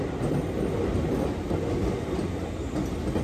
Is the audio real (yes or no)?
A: yes